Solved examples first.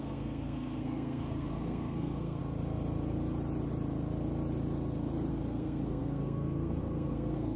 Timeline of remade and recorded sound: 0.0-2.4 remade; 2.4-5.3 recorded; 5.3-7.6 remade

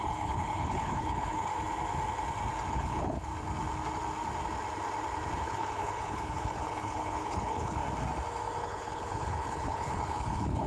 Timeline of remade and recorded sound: 0.0-1.5 remade; 1.5-2.7 recorded; 2.7-3.3 remade; 3.3-5.4 recorded; 5.4-7.8 remade; 7.8-8.6 recorded; 8.6-10.7 remade